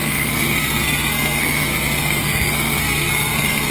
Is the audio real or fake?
fake